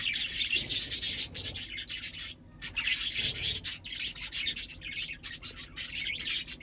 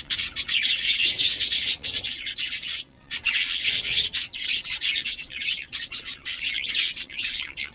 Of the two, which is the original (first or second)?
first